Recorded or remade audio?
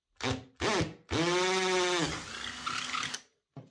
recorded